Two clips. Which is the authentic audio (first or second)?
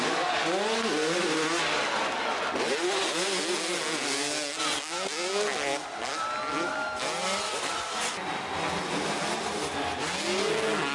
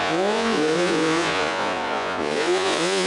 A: first